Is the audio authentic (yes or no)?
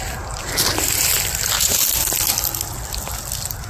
yes